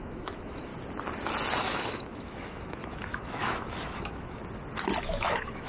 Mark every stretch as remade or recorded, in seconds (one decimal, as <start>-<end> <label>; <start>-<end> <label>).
0.0-0.7 remade; 0.7-1.6 recorded; 1.6-4.4 remade; 4.4-5.0 recorded; 5.0-5.7 remade